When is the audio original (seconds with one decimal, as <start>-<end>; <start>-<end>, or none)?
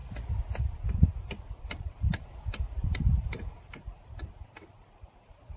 0.0-0.6